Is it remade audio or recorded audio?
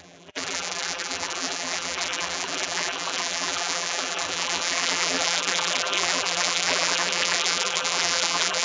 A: remade